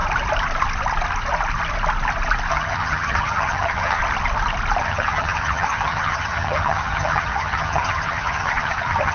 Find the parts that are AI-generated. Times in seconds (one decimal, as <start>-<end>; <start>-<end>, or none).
2.5-4.0; 4.8-9.1